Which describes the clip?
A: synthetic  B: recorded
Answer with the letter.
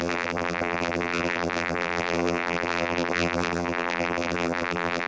A